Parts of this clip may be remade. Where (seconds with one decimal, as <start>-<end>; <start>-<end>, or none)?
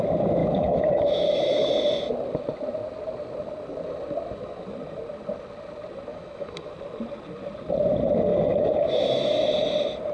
0.4-1.7; 6.1-6.7; 8.3-9.5